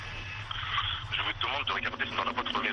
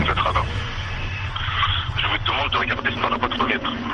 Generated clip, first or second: second